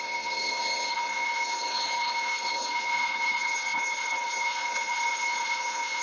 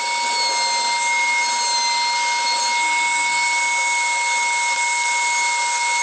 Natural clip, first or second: second